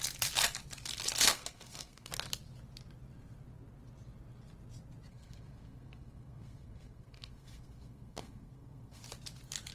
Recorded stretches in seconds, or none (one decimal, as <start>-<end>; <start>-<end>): 0.0-1.3; 2.1-5.1; 9.0-9.7